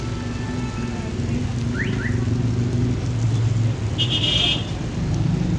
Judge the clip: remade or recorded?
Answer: recorded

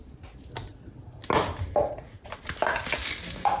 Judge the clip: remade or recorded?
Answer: recorded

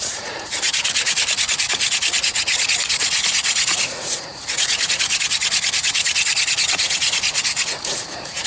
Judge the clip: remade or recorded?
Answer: remade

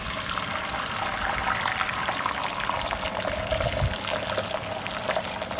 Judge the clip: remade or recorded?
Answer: recorded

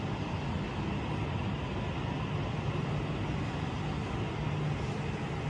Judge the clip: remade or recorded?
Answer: recorded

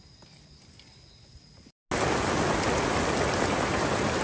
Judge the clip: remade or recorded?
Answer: recorded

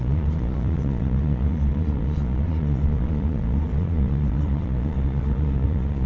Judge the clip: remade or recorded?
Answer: remade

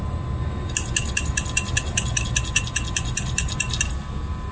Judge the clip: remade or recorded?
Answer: recorded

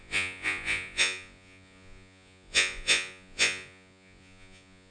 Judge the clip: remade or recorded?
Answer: remade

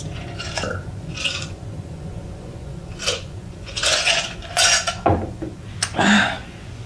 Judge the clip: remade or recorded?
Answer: remade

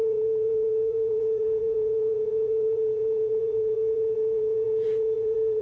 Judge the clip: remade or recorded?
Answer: remade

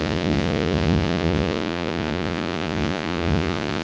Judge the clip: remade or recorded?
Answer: remade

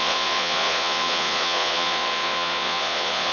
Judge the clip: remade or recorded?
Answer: remade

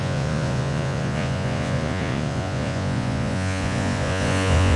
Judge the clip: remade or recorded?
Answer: remade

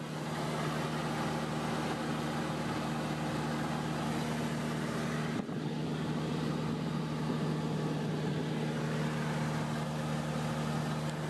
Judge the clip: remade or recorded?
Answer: recorded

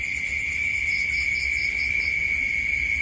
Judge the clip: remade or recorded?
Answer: recorded